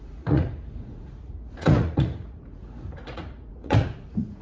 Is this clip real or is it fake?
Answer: fake